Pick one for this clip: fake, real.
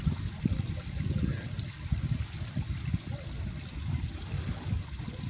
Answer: real